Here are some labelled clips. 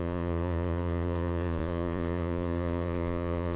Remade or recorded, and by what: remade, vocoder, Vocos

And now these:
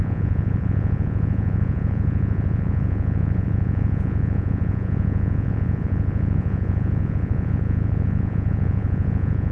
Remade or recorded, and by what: remade, vocoder, Vocos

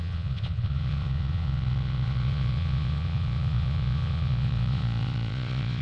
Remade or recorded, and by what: remade, vocoder, Vocos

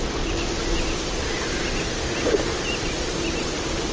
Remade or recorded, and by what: recorded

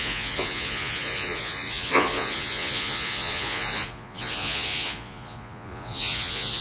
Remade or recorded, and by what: remade, vocoder, Vocos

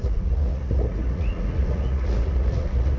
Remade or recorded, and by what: remade, vocoder, Vocos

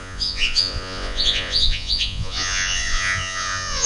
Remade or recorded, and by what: remade, vocoder, Vocos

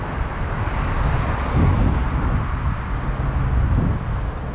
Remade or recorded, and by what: recorded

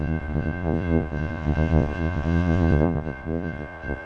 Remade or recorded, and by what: remade, vocoder, Vocos